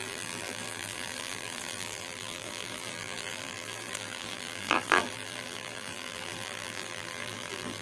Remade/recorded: remade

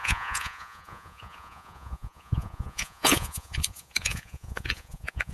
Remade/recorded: remade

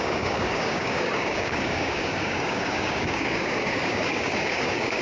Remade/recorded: remade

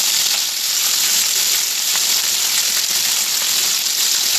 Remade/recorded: recorded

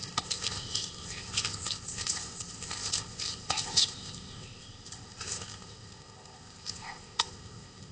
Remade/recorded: remade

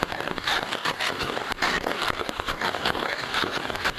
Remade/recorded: remade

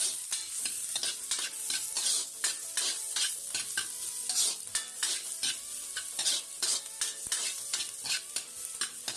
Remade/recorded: recorded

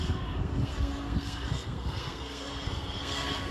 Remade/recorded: remade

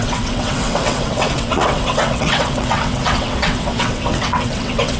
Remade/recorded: remade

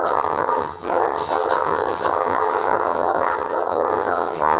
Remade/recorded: remade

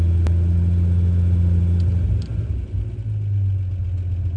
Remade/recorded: recorded